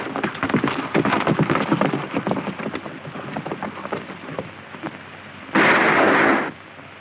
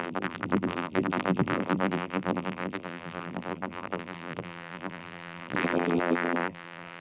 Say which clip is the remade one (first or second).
second